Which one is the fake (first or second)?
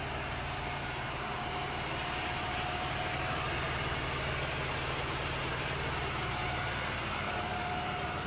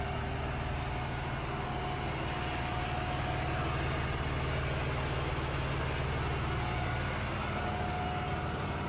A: first